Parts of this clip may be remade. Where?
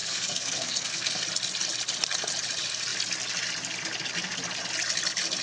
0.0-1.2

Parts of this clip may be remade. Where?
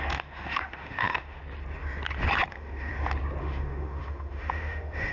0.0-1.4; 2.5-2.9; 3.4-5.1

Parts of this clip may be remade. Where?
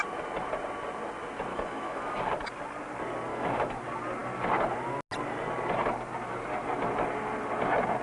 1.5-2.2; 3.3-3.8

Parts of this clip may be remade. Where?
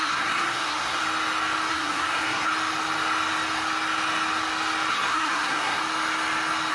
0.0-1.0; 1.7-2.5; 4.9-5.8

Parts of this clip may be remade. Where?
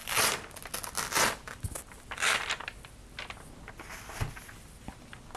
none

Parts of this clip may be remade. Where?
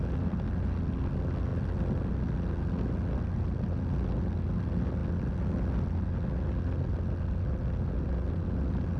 none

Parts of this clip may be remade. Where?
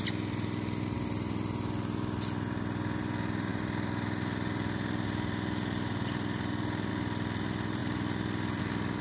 none